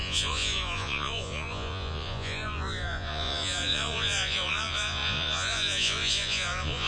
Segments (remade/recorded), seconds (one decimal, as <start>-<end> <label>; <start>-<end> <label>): 0.0-6.9 remade